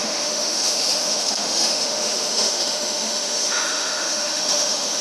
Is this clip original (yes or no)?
no